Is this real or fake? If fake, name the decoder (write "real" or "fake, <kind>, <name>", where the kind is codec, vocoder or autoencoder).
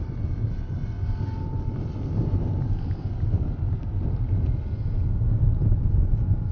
real